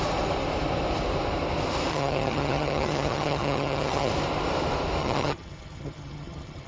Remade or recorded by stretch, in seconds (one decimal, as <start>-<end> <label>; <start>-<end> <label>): 0.0-1.9 recorded; 1.9-4.1 remade; 4.1-5.0 recorded; 5.0-6.7 remade